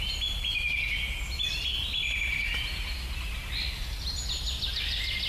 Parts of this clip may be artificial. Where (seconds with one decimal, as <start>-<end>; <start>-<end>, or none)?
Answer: none